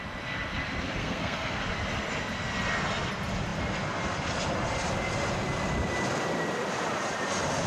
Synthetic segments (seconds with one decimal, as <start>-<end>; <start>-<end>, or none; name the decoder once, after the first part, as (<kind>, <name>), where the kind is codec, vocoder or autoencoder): 1.0-1.6 (codec, SNAC)